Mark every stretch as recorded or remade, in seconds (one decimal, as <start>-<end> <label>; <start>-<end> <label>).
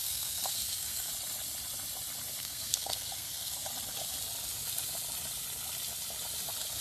0.0-1.1 remade; 1.1-2.4 recorded; 2.4-3.5 remade; 3.5-6.8 recorded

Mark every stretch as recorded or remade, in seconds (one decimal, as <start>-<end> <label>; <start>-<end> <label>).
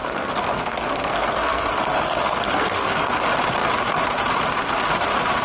0.0-3.2 remade; 3.2-5.4 recorded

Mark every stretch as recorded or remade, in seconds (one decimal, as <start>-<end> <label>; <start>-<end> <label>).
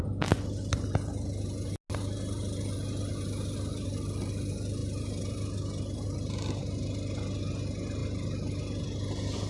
0.0-9.5 recorded